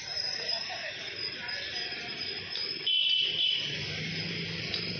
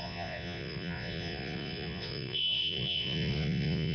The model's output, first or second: second